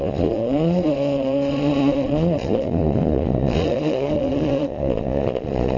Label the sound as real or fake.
fake